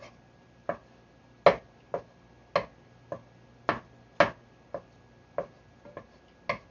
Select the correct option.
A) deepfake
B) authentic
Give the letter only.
B